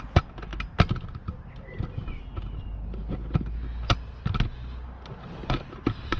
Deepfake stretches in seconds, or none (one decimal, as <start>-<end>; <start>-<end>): 5.4-6.2